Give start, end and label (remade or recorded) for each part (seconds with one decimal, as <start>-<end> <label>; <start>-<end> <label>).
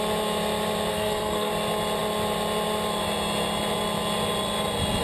0.0-0.9 recorded; 0.9-1.5 remade; 1.5-5.0 recorded